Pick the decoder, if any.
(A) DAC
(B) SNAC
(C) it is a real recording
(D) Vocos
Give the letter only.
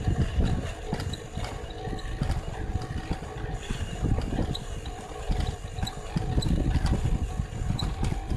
C